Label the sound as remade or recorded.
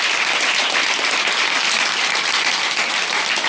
recorded